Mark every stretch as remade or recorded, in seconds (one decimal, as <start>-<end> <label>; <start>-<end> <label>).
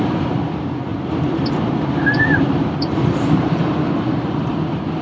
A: 0.0-5.0 remade